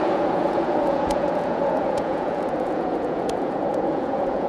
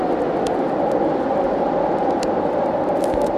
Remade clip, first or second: first